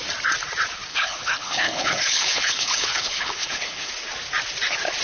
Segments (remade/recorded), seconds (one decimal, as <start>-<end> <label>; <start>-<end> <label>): 0.0-0.9 recorded; 0.9-3.9 remade; 3.9-5.0 recorded